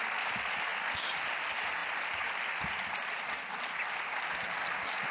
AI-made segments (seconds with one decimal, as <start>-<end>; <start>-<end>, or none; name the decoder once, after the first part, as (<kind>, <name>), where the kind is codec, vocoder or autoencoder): none